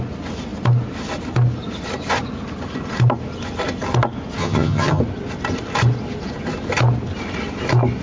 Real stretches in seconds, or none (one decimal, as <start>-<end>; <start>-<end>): 0.0-4.4; 5.0-8.0